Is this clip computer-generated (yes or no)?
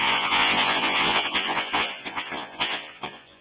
yes